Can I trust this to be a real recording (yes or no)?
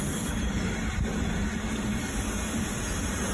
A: yes